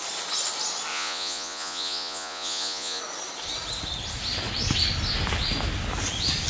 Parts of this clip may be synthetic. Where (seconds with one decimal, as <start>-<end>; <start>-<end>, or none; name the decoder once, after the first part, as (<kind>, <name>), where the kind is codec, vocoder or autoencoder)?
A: 0.9-3.0 (vocoder, Vocos)